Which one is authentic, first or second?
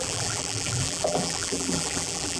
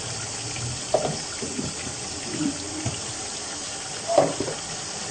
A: second